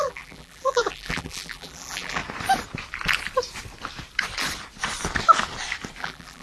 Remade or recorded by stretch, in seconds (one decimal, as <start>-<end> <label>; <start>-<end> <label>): 0.0-2.2 remade; 2.2-6.0 recorded; 6.0-6.4 remade